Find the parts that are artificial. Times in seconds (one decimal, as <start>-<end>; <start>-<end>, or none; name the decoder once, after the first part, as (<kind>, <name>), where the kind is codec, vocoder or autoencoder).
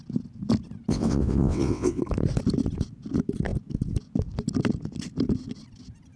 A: 0.9-2.0 (vocoder, WaveNeXt)